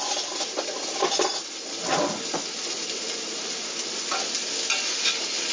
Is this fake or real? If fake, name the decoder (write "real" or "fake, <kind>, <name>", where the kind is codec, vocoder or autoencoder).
real